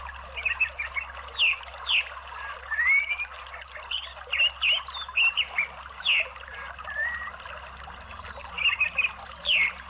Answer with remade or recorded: recorded